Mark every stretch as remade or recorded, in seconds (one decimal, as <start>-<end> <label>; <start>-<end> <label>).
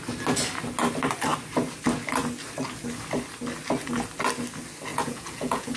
0.0-4.9 recorded; 4.9-5.8 remade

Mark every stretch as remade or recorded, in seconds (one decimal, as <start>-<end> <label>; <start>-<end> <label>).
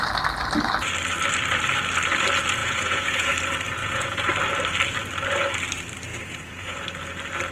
0.0-2.6 recorded; 2.6-3.3 remade; 3.3-3.8 recorded; 3.8-4.3 remade; 4.3-6.1 recorded; 6.1-6.8 remade; 6.8-7.5 recorded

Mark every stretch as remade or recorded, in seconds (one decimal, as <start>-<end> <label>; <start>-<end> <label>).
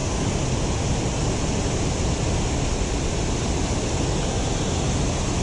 0.0-5.4 recorded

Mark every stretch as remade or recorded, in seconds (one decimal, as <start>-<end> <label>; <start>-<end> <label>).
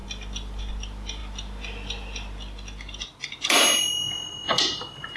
0.0-5.2 recorded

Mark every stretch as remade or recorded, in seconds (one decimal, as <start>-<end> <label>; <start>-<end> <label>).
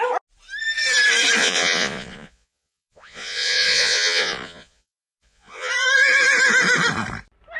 0.0-1.4 recorded; 1.4-5.7 remade; 5.7-7.6 recorded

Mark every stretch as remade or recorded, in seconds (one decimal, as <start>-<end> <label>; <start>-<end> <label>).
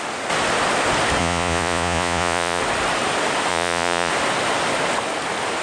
0.0-1.2 recorded; 1.2-2.6 remade; 2.6-3.5 recorded; 3.5-4.1 remade; 4.1-5.6 recorded